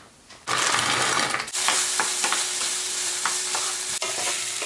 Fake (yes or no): yes